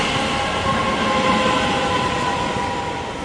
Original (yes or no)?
yes